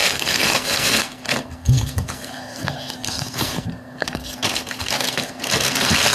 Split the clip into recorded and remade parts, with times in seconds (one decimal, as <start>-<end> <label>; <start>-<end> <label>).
0.0-6.1 remade